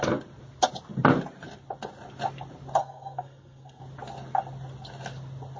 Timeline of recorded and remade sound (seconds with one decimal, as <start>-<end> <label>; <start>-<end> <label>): 0.0-2.8 recorded; 2.8-3.8 remade; 3.8-5.6 recorded